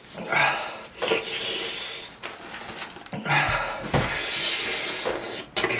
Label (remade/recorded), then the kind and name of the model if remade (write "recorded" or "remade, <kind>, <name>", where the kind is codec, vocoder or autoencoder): recorded